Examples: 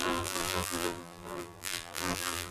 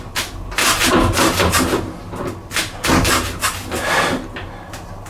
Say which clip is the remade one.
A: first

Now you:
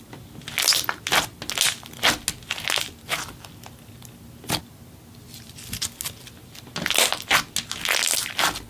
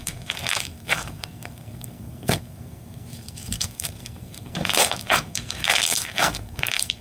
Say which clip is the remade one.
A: second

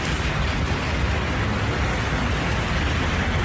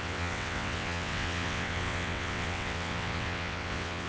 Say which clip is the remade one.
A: second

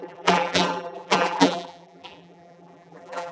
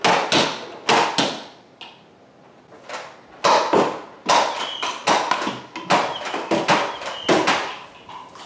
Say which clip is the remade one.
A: first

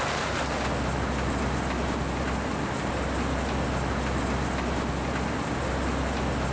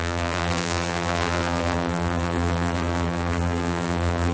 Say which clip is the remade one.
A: second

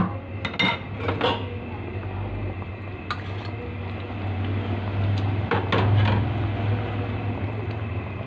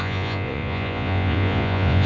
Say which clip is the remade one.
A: second